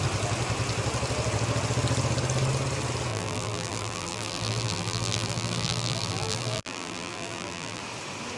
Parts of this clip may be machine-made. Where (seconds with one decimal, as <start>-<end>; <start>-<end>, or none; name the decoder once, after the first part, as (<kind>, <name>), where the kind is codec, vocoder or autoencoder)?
3.1-7.8 (vocoder, BigVGAN v2)